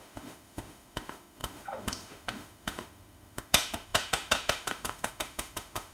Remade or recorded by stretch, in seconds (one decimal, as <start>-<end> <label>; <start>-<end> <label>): 0.0-5.9 remade